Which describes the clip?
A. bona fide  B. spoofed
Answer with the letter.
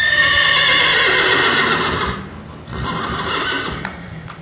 A